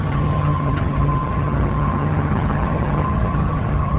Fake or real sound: fake